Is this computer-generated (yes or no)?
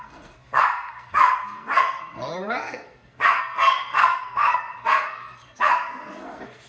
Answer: yes